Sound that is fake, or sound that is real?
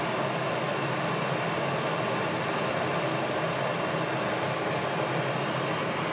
real